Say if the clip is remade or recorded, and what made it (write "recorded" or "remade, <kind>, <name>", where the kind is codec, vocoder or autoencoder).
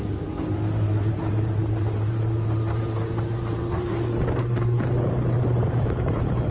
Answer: remade, vocoder, BigVGAN v2